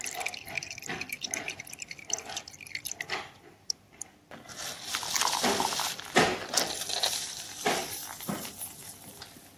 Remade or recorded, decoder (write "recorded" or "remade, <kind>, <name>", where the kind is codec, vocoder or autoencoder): recorded